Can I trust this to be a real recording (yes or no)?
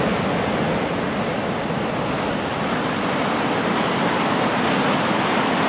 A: yes